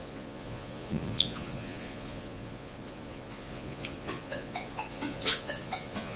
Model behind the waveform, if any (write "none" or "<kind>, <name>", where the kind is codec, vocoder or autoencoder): vocoder, Vocos